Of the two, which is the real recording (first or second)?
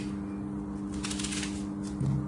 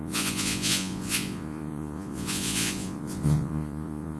first